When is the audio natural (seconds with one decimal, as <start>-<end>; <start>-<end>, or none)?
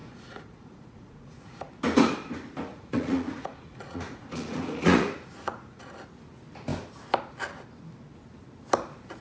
1.6-2.7; 5.9-9.2